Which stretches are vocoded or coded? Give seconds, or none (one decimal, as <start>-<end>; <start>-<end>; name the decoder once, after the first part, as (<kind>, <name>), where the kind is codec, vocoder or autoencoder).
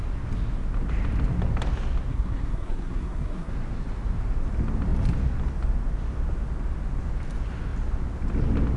2.1-3.5 (codec, SNAC)